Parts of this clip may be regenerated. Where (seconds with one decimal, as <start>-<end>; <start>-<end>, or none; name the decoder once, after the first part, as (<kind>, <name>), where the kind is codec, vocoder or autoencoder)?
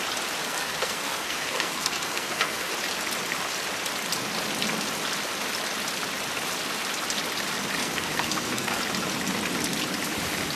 0.4-2.7 (codec, SNAC); 7.8-8.8